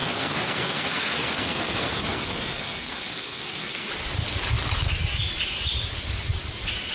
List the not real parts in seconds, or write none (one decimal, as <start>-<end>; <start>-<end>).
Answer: 0.0-3.9